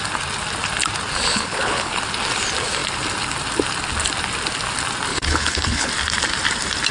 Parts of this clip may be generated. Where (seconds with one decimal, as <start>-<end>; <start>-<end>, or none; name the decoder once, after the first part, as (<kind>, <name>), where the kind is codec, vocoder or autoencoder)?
1.3-2.0 (codec, HILCodec); 5.1-5.9